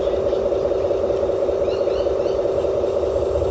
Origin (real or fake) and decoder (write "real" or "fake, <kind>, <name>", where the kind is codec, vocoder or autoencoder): real